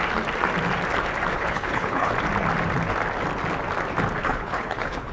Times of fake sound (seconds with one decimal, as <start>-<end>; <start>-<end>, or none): 1.3-2.1; 4.2-5.1